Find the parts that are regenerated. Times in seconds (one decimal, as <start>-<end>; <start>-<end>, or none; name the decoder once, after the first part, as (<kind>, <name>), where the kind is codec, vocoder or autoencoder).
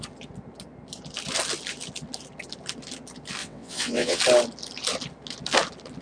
3.4-4.2 (vocoder, WaveNeXt)